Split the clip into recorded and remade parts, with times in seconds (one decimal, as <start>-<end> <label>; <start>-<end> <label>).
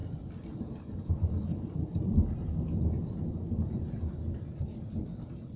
0.0-5.6 recorded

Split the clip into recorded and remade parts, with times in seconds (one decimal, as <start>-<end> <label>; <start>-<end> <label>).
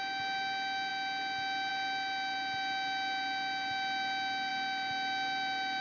0.0-5.8 recorded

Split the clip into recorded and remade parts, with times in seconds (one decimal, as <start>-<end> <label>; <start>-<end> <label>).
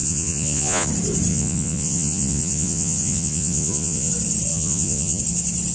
0.0-0.9 remade; 0.9-1.3 recorded; 1.3-4.1 remade; 4.1-4.5 recorded; 4.5-5.2 remade; 5.2-5.7 recorded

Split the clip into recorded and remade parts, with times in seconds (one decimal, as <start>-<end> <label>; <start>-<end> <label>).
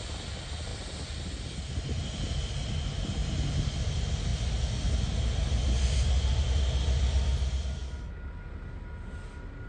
0.0-9.7 recorded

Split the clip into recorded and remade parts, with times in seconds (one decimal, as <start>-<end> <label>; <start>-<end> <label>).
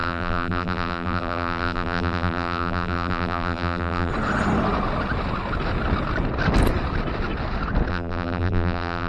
0.0-4.1 remade; 4.1-7.9 recorded; 7.9-9.1 remade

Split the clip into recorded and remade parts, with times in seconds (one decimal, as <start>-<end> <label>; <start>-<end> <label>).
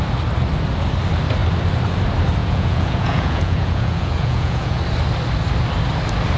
0.0-2.4 recorded; 2.4-4.8 remade; 4.8-6.4 recorded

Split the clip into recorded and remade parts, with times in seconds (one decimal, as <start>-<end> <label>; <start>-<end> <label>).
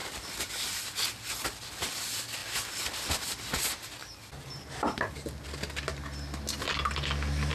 0.0-7.5 recorded